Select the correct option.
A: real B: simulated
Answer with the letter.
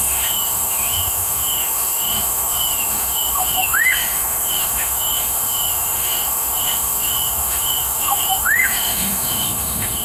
B